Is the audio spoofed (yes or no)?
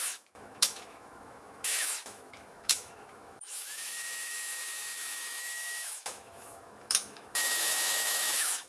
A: yes